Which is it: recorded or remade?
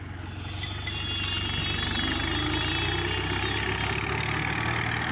recorded